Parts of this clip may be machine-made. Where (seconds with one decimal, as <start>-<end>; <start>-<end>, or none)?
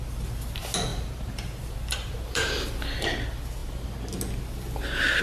0.9-2.7